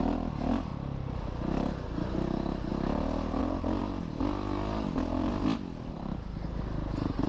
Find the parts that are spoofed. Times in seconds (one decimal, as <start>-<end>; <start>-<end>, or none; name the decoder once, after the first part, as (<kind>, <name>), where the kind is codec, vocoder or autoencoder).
none